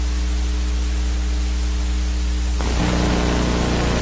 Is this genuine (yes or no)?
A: yes